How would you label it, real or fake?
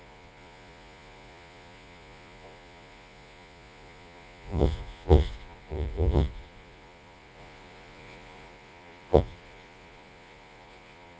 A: fake